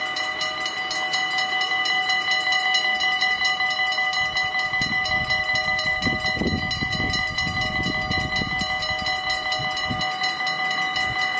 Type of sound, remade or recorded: recorded